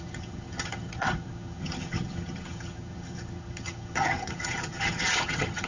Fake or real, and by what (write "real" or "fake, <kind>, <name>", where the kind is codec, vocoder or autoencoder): fake, vocoder, HiFi-GAN